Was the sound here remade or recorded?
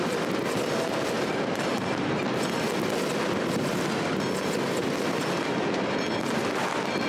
recorded